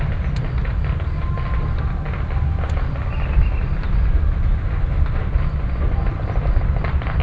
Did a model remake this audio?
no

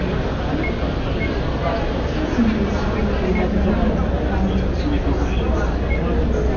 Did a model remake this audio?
no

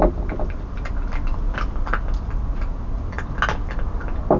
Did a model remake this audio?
no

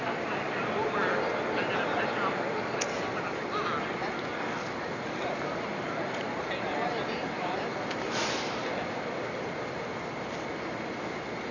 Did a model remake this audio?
no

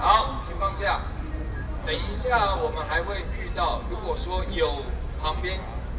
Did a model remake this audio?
no